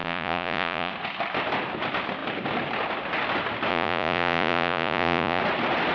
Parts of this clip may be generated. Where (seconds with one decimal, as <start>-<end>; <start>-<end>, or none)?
0.0-0.9; 3.7-5.4